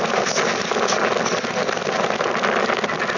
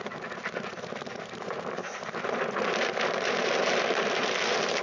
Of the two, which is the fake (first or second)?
second